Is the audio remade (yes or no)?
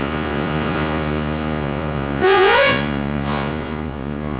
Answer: yes